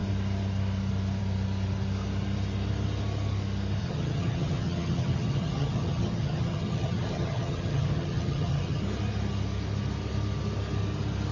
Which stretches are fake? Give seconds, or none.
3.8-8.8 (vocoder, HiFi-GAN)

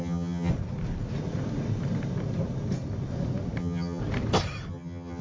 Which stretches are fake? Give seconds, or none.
0.0-0.5 (vocoder, HiFi-GAN); 3.6-4.0; 4.7-5.2

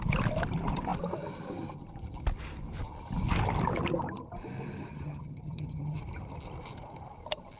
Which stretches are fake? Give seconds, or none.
4.9-6.0 (vocoder, HiFi-GAN)

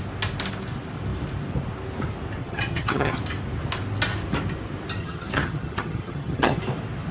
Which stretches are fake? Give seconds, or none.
2.4-3.2 (vocoder, HiFi-GAN); 5.0-6.6

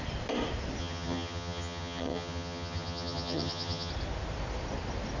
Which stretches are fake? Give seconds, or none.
0.8-3.9 (vocoder, HiFi-GAN)